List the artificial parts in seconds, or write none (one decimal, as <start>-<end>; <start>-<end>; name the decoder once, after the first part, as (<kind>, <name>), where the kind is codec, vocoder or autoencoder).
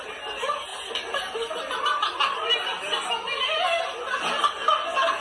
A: none